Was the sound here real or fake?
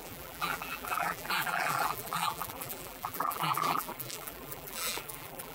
fake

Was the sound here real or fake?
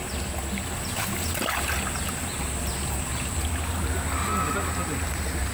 real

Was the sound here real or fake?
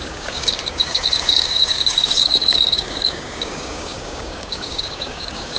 fake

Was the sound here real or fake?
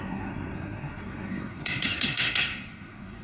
fake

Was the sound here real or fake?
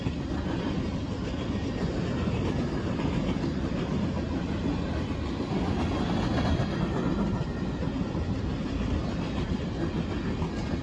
real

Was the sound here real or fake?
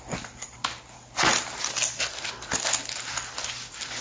real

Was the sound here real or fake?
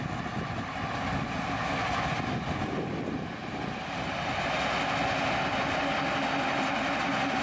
real